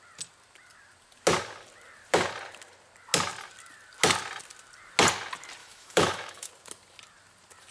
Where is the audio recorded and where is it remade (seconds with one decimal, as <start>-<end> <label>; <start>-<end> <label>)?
0.0-5.6 recorded; 5.6-6.5 remade; 6.5-7.7 recorded